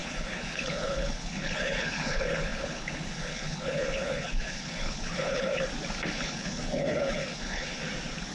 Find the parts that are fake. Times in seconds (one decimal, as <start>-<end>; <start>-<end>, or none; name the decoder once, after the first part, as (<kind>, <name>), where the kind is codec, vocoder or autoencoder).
0.0-5.5 (codec, HILCodec); 6.1-7.8